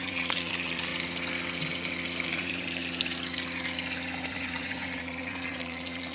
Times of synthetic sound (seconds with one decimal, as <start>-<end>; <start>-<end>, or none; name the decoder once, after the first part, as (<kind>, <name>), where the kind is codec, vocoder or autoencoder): 0.0-0.9 (vocoder, Vocos); 2.3-2.8; 4.3-6.1